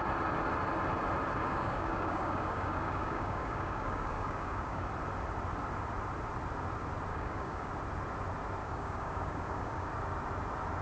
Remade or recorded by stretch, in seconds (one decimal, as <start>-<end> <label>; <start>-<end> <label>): 0.0-1.4 recorded; 1.4-4.9 remade; 4.9-7.1 recorded; 7.1-7.7 remade; 7.7-8.6 recorded; 8.6-9.9 remade; 9.9-10.8 recorded